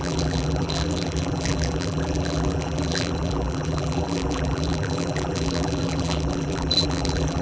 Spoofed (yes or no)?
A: yes